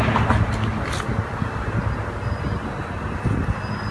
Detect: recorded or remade recorded